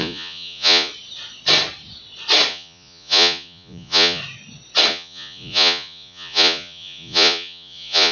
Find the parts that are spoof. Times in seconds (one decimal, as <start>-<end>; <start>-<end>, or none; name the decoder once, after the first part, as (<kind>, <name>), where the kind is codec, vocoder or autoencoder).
0.0-0.9 (vocoder, Vocos); 2.5-4.2; 4.9-8.1